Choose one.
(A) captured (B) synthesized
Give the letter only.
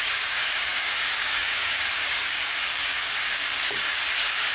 B